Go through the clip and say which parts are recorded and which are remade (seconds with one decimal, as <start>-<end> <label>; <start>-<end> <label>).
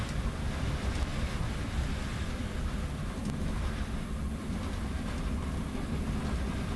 0.0-6.8 recorded